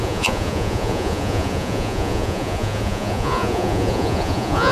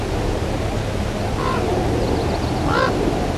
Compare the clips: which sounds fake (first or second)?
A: first